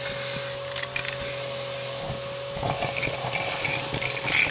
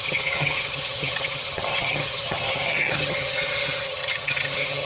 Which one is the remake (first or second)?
second